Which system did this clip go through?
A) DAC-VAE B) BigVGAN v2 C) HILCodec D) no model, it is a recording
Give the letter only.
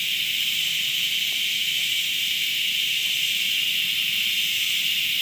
B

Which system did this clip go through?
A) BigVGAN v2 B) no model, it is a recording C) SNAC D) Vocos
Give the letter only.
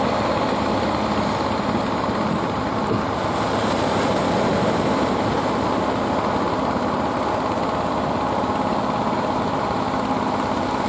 B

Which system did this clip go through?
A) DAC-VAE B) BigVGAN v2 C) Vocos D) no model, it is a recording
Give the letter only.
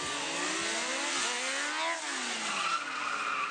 D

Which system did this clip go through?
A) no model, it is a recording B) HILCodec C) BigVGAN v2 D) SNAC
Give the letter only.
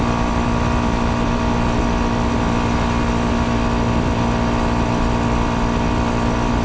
A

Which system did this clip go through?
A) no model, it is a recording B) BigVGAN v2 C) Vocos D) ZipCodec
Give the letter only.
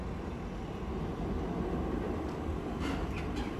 A